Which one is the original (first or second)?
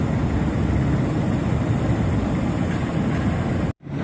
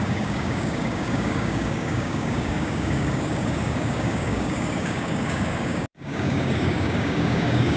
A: first